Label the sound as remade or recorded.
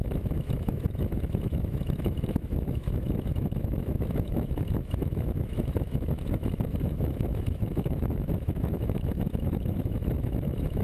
remade